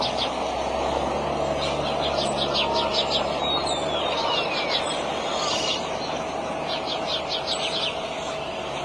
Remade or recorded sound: recorded